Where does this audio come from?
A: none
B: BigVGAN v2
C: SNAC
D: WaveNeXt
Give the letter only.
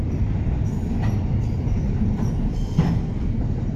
A